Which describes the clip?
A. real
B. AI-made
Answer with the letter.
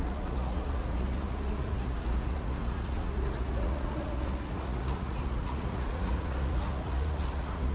B